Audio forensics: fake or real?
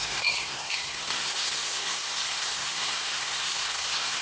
fake